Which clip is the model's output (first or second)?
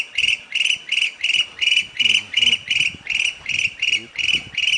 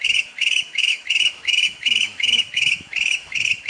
second